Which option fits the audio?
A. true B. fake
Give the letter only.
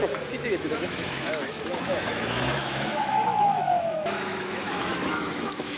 B